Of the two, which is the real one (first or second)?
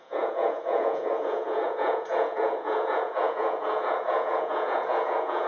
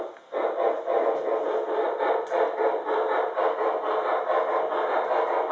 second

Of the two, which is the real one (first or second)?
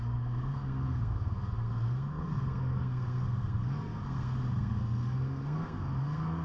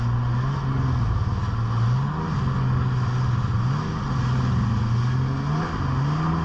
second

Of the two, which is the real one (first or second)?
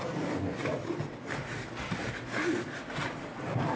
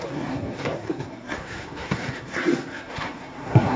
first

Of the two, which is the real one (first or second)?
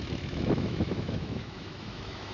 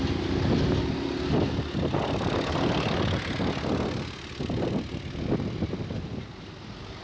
second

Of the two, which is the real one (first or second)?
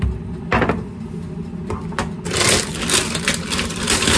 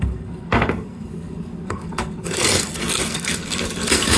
first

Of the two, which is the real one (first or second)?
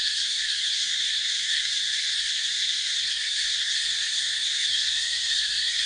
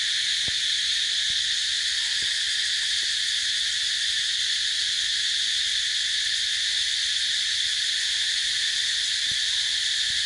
second